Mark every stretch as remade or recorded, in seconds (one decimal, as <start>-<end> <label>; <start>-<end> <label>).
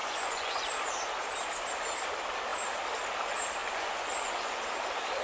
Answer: 0.0-0.6 remade; 0.6-3.6 recorded; 3.6-4.6 remade; 4.6-5.2 recorded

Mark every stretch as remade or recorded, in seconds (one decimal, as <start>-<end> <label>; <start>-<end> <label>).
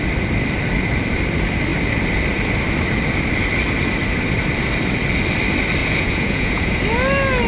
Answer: 0.0-5.8 recorded; 5.8-6.8 remade; 6.8-7.5 recorded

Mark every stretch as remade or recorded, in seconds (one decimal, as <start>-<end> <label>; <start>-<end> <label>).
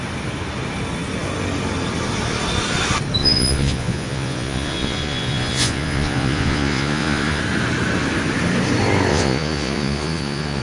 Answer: 0.0-3.2 recorded; 3.2-7.4 remade; 7.4-9.1 recorded; 9.1-10.6 remade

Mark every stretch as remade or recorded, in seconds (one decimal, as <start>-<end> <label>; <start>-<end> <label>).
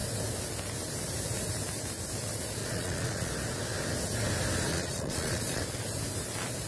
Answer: 0.0-2.6 recorded; 2.6-3.3 remade; 3.3-4.7 recorded; 4.7-5.6 remade; 5.6-6.7 recorded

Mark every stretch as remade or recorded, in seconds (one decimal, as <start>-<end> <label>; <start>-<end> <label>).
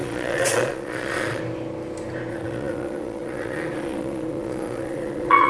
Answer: 0.0-1.4 remade; 1.4-2.3 recorded; 2.3-5.5 remade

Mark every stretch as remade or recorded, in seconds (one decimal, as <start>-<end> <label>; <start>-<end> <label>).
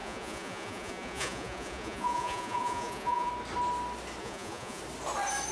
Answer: 0.0-3.3 remade; 3.3-4.2 recorded; 4.2-4.8 remade; 4.8-5.5 recorded